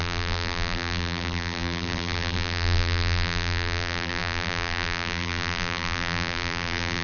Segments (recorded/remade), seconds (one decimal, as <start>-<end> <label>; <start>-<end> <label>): 0.0-7.0 remade